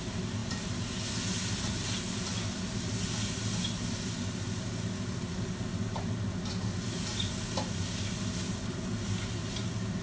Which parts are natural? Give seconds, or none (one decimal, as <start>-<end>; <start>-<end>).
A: 0.0-10.0